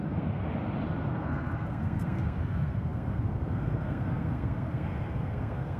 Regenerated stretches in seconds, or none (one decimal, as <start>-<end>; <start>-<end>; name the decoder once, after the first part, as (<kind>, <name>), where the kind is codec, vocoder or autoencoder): 0.0-0.4 (codec, SNAC); 1.1-5.8